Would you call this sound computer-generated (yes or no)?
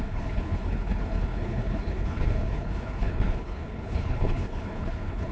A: yes